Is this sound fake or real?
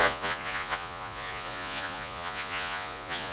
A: fake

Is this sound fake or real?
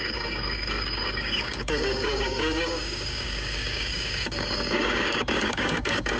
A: fake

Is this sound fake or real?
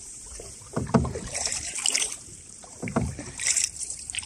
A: fake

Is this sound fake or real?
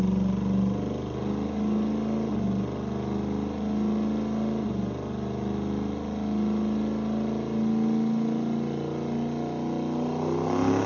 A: real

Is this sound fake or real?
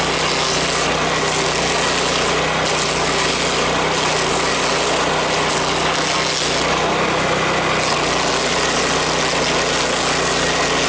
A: real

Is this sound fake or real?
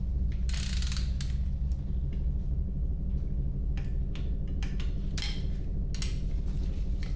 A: real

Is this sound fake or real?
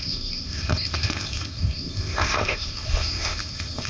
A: fake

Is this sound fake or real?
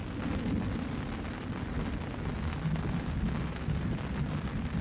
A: real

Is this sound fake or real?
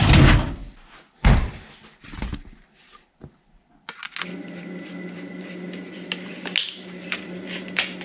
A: real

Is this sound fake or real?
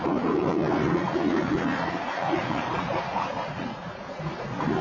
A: fake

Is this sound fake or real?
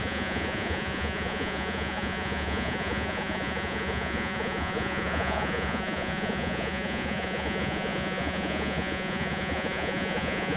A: fake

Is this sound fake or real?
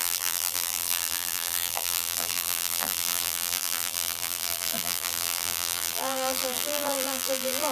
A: fake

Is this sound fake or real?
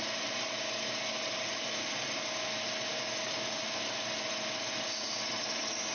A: real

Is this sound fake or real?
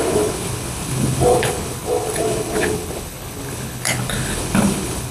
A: fake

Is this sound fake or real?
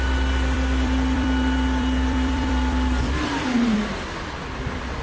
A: fake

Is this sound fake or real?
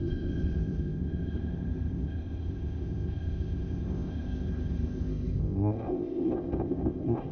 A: fake